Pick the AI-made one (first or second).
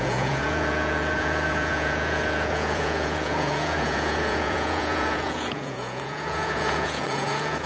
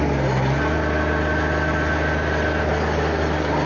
first